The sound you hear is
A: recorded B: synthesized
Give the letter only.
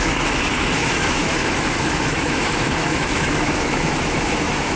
B